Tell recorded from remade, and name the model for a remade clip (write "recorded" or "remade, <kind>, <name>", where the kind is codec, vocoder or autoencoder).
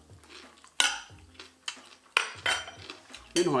recorded